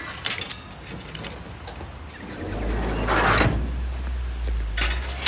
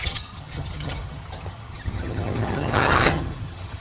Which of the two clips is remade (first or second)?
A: second